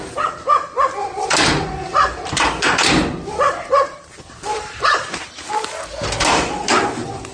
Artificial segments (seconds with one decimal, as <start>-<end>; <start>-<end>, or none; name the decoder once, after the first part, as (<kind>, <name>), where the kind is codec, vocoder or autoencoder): 1.1-5.5 (vocoder, BigVGAN v2)